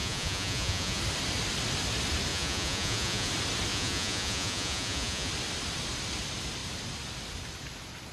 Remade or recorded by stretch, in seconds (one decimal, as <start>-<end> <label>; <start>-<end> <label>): 0.0-1.0 remade; 1.0-2.3 recorded; 2.3-3.3 remade; 3.3-3.7 recorded; 3.7-5.3 remade; 5.3-8.1 recorded

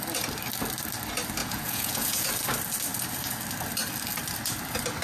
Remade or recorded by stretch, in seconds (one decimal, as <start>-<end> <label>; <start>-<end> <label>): 0.0-1.4 recorded; 1.4-2.3 remade; 2.3-5.0 recorded

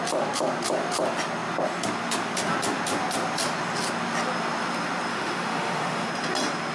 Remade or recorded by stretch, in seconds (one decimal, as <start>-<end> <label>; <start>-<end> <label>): 0.0-5.1 recorded; 5.1-6.1 remade; 6.1-6.7 recorded

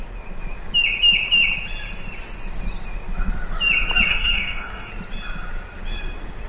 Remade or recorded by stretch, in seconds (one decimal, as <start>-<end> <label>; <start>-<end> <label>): 0.0-4.1 recorded; 4.1-4.9 remade; 4.9-6.5 recorded